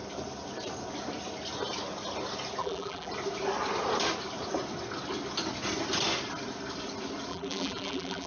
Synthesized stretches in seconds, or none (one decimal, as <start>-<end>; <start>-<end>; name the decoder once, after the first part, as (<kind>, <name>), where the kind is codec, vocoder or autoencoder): 2.6-3.1 (vocoder, BigVGAN v2); 7.3-8.3